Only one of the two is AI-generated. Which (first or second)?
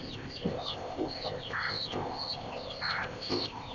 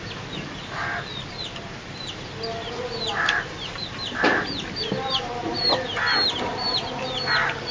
first